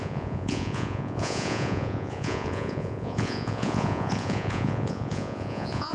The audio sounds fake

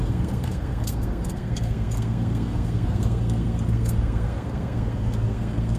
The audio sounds fake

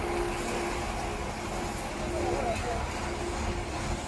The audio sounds real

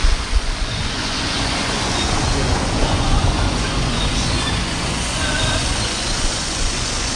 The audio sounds fake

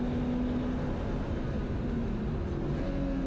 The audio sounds real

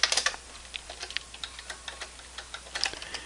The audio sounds real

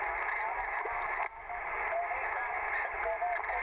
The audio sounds real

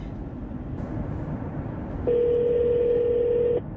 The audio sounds real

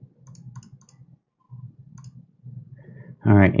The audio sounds real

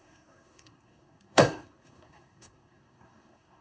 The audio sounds fake